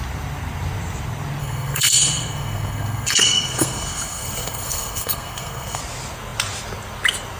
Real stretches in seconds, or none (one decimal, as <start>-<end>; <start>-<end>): 0.0-1.4; 5.8-7.4